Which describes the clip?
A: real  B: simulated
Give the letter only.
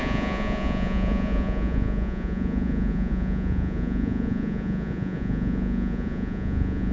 B